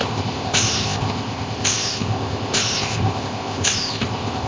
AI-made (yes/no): yes